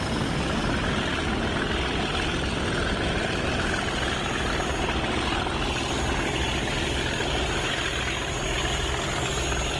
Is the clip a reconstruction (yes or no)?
no